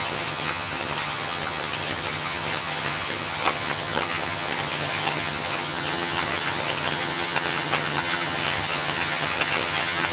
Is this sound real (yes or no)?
no